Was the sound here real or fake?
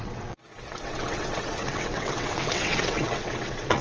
fake